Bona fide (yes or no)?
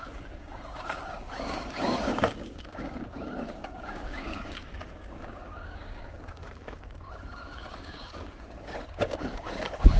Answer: no